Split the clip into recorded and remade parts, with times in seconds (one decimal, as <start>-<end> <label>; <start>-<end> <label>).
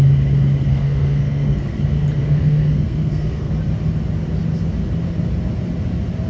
0.0-0.7 recorded; 0.7-1.8 remade; 1.8-2.2 recorded; 2.2-3.5 remade; 3.5-6.3 recorded